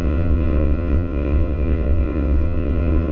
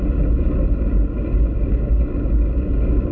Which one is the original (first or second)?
second